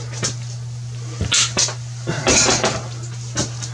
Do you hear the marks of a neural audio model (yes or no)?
no